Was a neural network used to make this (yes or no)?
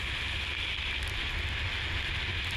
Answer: no